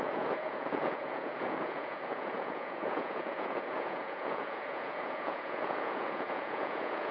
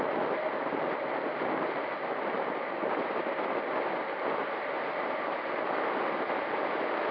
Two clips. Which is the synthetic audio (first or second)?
first